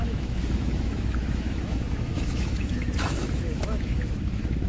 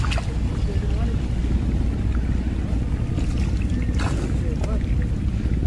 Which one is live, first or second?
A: second